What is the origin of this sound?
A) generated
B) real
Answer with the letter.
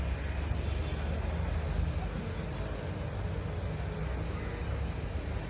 B